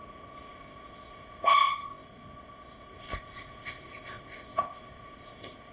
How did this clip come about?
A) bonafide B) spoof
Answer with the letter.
B